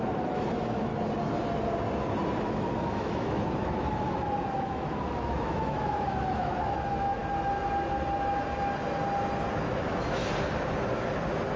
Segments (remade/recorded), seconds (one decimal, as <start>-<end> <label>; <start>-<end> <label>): 0.0-0.9 remade; 0.9-2.4 recorded; 2.4-7.2 remade; 7.2-9.5 recorded; 9.5-10.2 remade; 10.2-11.6 recorded